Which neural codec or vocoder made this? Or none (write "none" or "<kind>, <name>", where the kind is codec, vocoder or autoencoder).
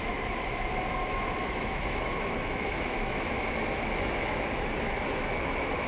autoencoder, DAC-VAE